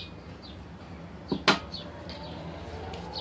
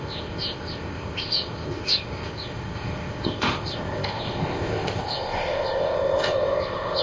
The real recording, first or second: first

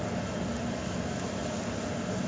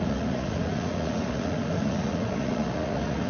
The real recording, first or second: first